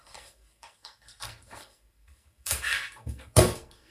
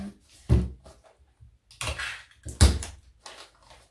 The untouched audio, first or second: second